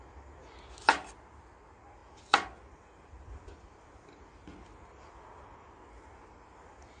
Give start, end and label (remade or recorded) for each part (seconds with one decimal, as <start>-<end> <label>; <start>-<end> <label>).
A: 0.0-7.0 recorded